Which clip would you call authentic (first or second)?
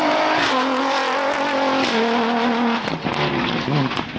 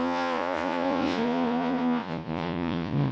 first